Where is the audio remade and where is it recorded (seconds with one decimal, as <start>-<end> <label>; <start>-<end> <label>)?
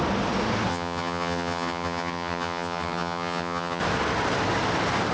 0.0-0.7 recorded; 0.7-3.8 remade; 3.8-5.1 recorded